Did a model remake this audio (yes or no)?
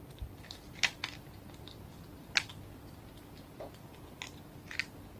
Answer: no